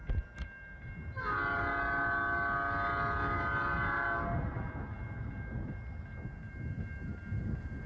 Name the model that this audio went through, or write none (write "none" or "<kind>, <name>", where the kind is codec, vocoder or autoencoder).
none